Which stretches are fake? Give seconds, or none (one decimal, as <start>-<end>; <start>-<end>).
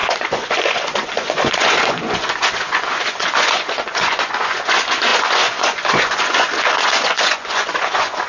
0.0-8.3